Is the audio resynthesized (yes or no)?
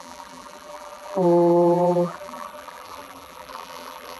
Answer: yes